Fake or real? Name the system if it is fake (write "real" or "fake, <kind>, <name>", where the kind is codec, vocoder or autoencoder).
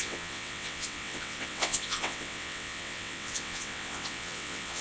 fake, vocoder, WaveNeXt